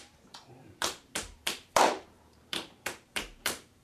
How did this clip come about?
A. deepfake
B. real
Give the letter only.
A